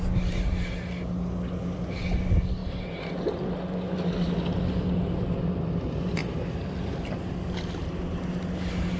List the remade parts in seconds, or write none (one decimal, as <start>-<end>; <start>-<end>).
6.2-7.2

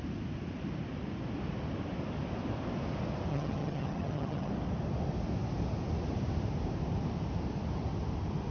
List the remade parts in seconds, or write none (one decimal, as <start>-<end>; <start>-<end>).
3.3-4.5

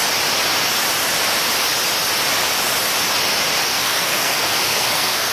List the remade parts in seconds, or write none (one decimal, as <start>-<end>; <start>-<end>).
3.7-5.3

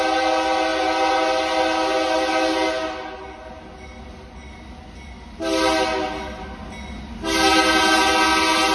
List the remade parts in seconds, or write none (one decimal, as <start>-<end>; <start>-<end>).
none

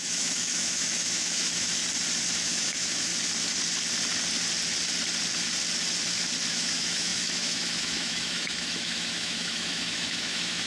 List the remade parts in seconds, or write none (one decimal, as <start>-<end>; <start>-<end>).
0.0-1.8; 2.4-3.1; 6.5-10.7

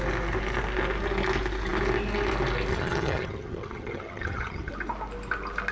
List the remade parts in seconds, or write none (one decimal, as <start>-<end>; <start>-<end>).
2.7-4.7

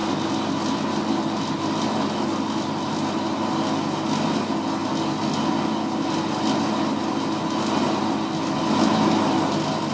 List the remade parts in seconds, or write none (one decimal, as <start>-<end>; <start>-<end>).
none

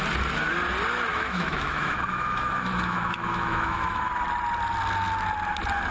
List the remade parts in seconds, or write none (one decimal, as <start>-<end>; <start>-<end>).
1.1-4.1